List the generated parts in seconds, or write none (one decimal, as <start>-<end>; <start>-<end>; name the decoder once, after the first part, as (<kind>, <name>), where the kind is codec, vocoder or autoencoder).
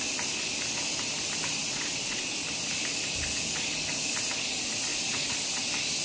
1.6-2.3 (vocoder, Vocos); 4.9-5.5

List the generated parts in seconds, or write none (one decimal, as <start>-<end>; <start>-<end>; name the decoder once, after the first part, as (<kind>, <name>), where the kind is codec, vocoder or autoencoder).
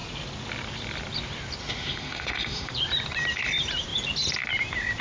1.6-2.7 (autoencoder, DAC-VAE)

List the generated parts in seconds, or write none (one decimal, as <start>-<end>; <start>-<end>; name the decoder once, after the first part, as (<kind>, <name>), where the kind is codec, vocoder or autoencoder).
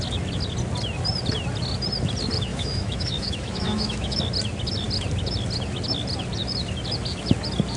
2.5-4.2 (autoencoder, DAC-VAE)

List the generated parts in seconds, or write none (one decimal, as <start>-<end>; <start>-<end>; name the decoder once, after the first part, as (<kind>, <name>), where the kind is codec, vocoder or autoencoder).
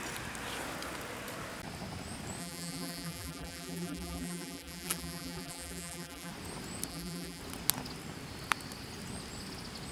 2.4-6.3 (vocoder, BigVGAN v2); 6.9-7.4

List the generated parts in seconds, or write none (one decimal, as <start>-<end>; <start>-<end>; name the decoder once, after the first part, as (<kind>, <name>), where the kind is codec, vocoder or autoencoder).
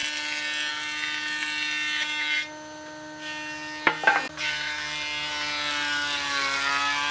none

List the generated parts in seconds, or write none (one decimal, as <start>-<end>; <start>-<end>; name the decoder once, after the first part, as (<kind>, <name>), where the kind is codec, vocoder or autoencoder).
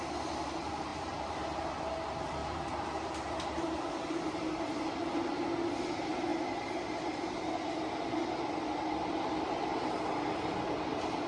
2.4-3.9 (vocoder, BigVGAN v2)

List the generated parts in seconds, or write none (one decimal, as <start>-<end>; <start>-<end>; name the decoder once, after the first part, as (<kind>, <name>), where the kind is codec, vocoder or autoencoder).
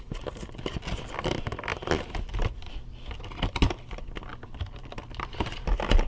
none